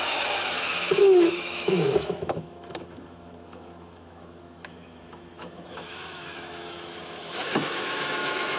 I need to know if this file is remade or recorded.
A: remade